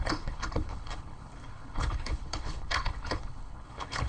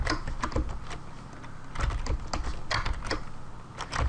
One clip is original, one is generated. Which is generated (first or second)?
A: first